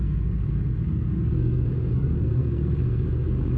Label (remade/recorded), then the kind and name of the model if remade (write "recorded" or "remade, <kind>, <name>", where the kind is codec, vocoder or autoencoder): remade, codec, SNAC